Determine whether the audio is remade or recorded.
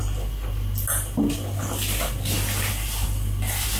recorded